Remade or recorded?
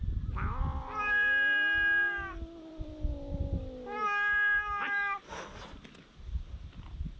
recorded